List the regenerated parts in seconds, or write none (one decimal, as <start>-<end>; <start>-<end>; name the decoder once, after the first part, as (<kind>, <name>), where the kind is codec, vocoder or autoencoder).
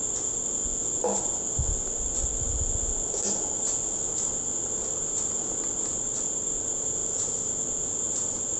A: none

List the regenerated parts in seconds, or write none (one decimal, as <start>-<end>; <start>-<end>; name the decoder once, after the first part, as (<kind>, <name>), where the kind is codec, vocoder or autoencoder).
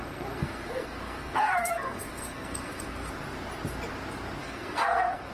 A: 0.0-3.1 (codec, SNAC); 4.4-5.3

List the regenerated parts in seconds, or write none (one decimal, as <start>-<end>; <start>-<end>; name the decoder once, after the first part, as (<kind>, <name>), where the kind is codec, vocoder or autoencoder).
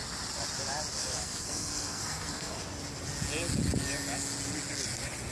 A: 1.0-2.6 (codec, SNAC)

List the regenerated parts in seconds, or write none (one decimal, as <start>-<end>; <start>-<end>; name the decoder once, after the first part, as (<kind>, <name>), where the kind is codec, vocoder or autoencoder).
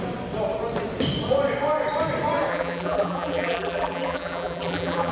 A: 2.5-5.1 (vocoder, BigVGAN v2)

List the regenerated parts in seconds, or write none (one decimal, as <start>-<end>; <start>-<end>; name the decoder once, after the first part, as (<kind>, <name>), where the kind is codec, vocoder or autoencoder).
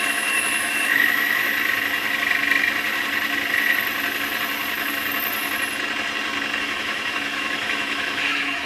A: 0.0-1.5 (autoencoder, DAC-VAE); 6.6-8.7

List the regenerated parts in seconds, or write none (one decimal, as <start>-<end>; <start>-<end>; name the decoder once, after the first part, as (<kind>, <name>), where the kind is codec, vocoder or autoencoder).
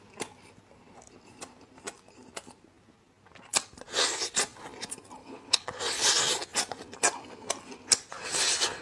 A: 5.2-5.8 (codec, HILCodec)